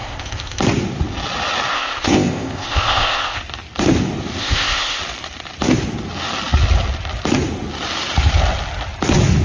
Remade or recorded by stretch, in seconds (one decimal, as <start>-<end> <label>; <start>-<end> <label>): 0.0-0.6 remade; 0.6-1.7 recorded; 1.7-3.4 remade; 3.4-4.4 recorded; 4.4-5.0 remade; 5.0-9.4 recorded